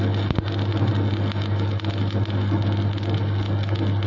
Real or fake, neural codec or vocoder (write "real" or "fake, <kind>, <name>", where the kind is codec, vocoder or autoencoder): real